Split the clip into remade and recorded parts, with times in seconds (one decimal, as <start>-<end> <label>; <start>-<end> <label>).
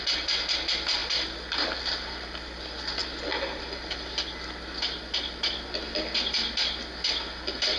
0.0-7.8 recorded